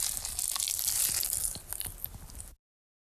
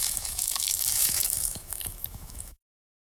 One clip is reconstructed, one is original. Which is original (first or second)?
first